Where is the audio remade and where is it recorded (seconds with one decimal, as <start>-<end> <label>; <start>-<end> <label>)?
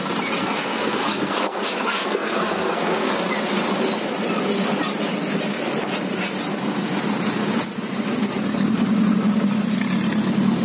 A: 0.0-0.4 recorded; 0.4-3.1 remade; 3.1-10.6 recorded